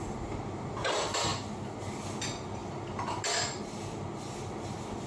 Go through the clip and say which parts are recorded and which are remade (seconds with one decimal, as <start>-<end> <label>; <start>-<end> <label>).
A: 0.0-5.1 recorded